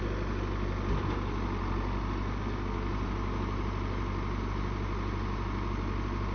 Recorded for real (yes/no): yes